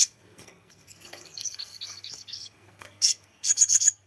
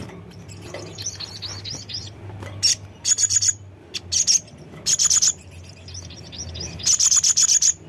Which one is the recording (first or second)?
second